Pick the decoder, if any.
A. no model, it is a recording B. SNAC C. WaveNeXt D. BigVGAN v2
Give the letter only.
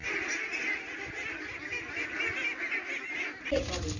A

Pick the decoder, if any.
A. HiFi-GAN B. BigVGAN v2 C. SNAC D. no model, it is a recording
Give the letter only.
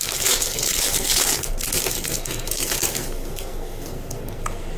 C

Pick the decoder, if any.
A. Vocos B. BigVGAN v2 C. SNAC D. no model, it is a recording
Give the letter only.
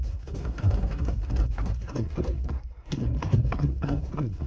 C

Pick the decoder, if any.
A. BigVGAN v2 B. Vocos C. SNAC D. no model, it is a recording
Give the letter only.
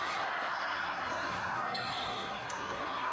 C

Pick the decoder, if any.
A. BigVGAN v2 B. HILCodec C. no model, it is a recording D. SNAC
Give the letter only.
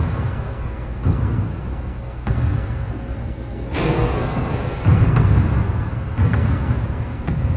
D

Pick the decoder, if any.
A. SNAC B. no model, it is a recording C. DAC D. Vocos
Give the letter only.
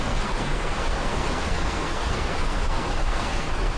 A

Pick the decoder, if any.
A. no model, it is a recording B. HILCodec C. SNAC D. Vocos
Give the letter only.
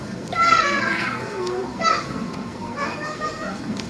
C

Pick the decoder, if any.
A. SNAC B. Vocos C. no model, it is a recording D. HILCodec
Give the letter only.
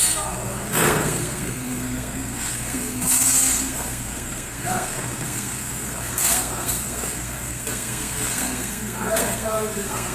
A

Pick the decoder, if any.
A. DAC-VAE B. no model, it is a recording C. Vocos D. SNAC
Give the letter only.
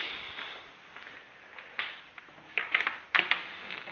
B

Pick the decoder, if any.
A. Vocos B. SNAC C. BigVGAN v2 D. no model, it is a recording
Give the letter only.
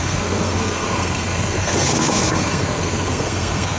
B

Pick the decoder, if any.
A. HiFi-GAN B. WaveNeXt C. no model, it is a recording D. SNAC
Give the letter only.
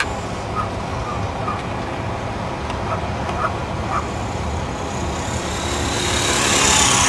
C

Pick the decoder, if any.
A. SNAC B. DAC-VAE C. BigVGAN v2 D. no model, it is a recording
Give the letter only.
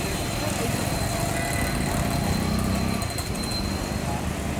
D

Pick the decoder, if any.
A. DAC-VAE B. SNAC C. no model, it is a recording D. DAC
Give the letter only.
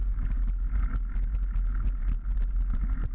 C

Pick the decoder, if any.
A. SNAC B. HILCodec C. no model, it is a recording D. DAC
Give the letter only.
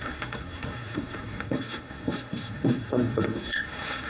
A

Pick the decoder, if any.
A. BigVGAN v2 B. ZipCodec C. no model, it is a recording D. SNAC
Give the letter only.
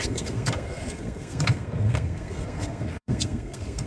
D